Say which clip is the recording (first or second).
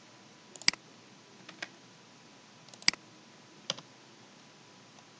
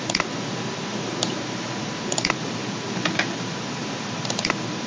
first